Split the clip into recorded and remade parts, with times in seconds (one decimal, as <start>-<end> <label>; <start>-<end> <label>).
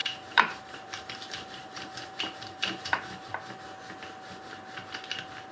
0.0-3.3 remade; 3.3-5.5 recorded